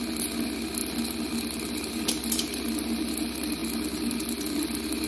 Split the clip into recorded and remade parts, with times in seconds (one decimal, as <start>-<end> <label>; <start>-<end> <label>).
0.0-5.1 recorded